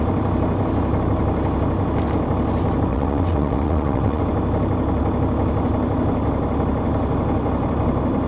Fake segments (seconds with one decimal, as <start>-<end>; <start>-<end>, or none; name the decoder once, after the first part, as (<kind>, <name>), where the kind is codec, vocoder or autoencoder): 2.9-4.2 (vocoder, WaveNeXt)